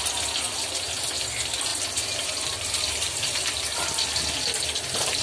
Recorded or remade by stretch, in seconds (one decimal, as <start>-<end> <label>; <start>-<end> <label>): 0.0-1.7 recorded; 1.7-4.1 remade; 4.1-5.2 recorded